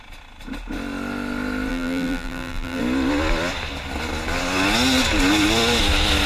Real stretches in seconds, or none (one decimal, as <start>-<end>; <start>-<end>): 0.0-1.7; 2.8-6.3